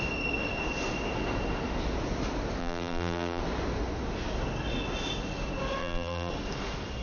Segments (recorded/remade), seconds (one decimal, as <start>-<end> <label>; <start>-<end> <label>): 0.0-2.6 recorded; 2.6-3.4 remade; 3.4-5.8 recorded; 5.8-6.3 remade; 6.3-7.0 recorded